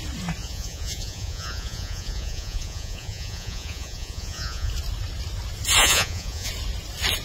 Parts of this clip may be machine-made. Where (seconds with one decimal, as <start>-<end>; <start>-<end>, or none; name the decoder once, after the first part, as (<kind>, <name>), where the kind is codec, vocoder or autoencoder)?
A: 0.4-4.7 (vocoder, Vocos); 5.8-6.5